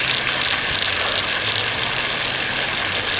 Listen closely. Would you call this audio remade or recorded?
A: recorded